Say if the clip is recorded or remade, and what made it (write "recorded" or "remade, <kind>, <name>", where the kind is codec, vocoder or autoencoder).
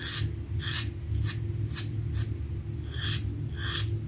recorded